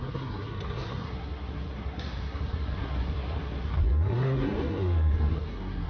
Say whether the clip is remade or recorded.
remade